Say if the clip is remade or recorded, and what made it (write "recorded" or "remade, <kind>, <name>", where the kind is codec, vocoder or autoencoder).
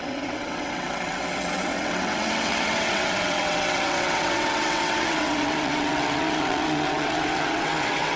remade, vocoder, WaveNeXt